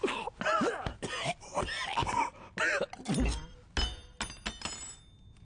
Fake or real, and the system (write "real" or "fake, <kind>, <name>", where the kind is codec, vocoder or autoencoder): real